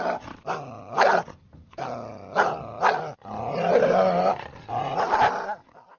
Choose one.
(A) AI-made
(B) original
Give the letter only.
B